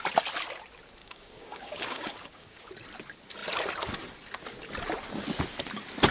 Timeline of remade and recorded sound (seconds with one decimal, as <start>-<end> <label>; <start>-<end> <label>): 0.0-1.0 recorded; 1.0-2.7 remade; 2.7-6.1 recorded